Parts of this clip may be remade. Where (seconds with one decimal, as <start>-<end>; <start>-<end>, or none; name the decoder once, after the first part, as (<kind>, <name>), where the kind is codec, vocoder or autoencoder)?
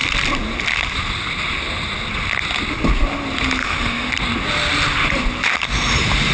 3.6-4.1 (autoencoder, DAC-VAE)